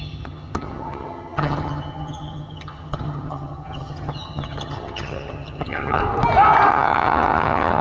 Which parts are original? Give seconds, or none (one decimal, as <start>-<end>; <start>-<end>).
6.0-6.7